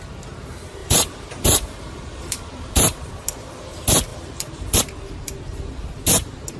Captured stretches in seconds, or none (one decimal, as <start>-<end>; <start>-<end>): 0.0-0.8; 3.1-4.1; 4.8-6.6